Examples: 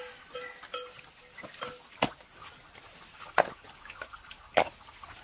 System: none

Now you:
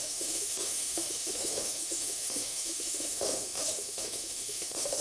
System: autoencoder, DAC-VAE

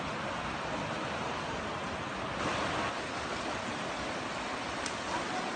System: none